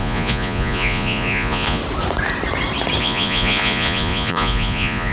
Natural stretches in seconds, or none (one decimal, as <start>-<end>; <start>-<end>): 1.8-3.0